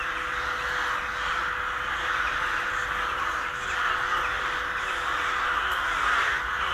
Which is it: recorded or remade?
recorded